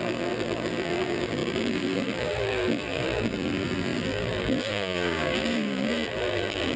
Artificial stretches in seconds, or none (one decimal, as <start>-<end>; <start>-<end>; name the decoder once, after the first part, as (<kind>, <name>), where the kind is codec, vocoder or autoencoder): 0.0-6.8 (vocoder, BigVGAN v2)